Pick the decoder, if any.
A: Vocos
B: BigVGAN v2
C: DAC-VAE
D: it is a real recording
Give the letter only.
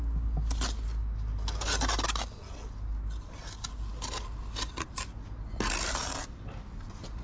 D